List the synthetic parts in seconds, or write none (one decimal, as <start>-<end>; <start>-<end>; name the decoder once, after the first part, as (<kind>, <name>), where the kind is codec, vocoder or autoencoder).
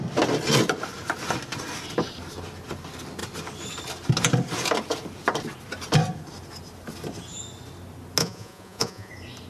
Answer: 8.2-9.1 (vocoder, Vocos)